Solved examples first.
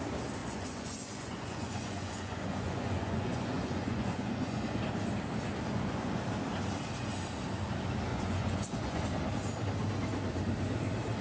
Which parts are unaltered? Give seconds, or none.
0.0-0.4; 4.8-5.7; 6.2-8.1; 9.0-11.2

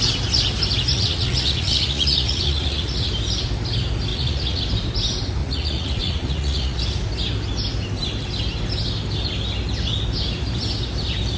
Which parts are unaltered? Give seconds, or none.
0.0-0.9; 3.1-4.1; 4.6-5.4; 6.8-11.4

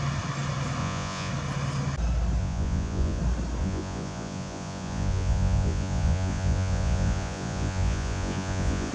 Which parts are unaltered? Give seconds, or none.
0.0-0.8; 1.3-2.4; 3.2-3.6

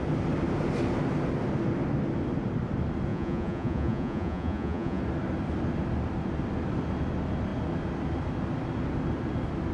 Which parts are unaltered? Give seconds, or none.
0.0-3.1; 5.0-9.7

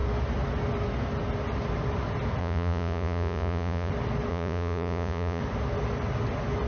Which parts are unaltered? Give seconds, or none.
0.0-2.4; 3.9-4.3; 5.4-6.7

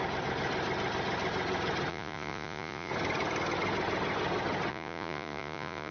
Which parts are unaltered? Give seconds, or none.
0.0-1.9; 2.9-4.7

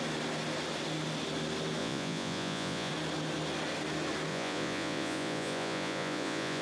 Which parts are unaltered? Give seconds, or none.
0.0-1.8; 2.9-4.3